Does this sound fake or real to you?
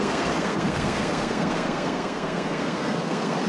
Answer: fake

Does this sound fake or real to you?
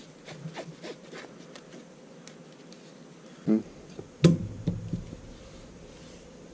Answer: real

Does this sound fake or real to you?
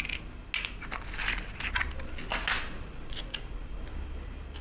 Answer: real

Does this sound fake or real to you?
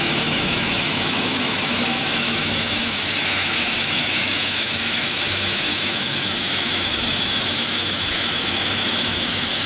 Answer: fake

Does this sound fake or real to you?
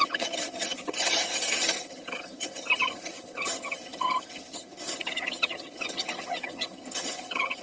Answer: fake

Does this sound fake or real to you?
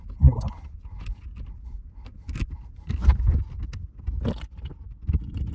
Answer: real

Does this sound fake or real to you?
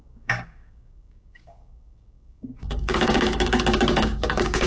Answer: fake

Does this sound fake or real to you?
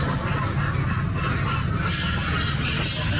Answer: real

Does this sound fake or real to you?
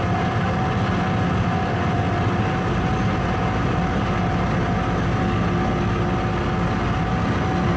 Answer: real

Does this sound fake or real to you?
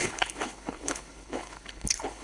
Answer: fake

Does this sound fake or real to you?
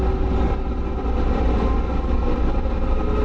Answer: real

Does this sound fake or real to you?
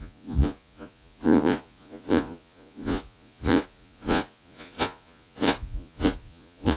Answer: fake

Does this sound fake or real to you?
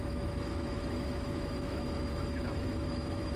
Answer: fake